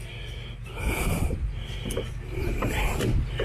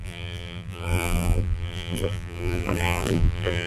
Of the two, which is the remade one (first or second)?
second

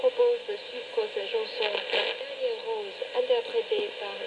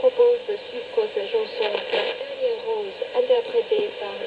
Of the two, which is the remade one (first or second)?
second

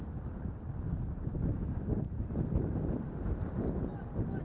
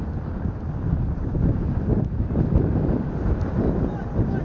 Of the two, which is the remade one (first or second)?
second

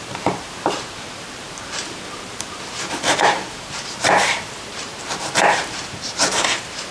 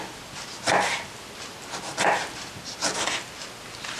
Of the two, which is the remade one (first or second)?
first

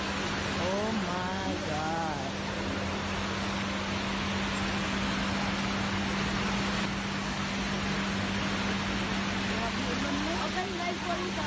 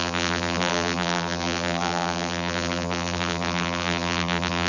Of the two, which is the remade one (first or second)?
second